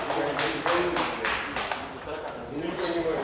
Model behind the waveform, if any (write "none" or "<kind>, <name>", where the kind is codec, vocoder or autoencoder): none